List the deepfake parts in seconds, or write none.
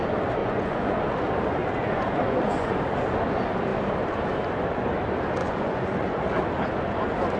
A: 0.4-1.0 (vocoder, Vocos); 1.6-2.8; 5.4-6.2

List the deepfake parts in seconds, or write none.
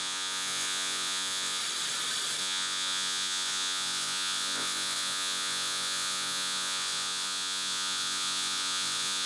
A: 0.0-1.6 (vocoder, Vocos); 2.4-9.3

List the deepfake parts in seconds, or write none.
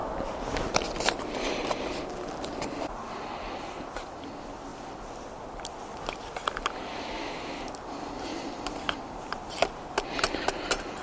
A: 6.9-7.6 (autoencoder, DAC-VAE)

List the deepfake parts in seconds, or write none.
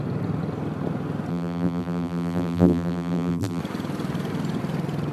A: 1.3-3.6 (vocoder, BigVGAN v2)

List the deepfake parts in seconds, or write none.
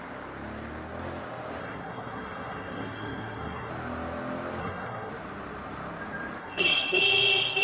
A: 1.6-3.7 (codec, SNAC); 4.6-5.1; 6.4-7.0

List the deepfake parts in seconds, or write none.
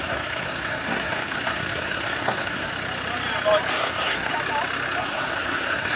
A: 0.0-2.7 (codec, SNAC); 3.7-4.3; 5.0-6.0